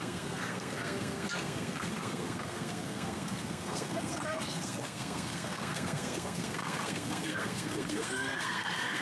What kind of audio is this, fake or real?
fake